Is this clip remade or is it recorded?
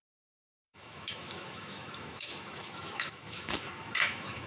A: remade